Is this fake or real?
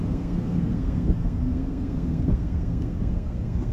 fake